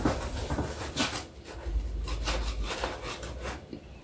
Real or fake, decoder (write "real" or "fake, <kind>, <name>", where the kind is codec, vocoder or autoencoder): real